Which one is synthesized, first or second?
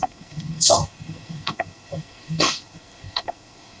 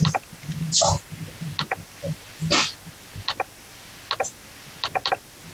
first